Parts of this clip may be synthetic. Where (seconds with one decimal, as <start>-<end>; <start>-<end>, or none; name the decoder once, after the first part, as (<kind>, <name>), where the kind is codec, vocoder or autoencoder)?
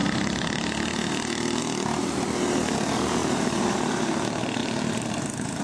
0.0-1.6 (vocoder, BigVGAN v2); 3.2-4.0; 4.6-5.6